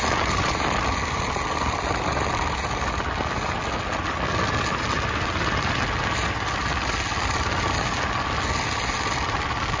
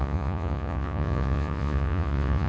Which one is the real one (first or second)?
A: first